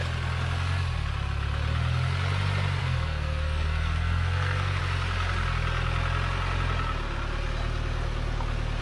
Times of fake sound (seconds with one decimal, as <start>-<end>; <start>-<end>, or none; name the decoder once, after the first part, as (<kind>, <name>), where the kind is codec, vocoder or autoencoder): 2.8-4.8 (codec, SNAC)